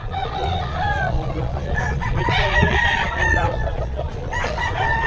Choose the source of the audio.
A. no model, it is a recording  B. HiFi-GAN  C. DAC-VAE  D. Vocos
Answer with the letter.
D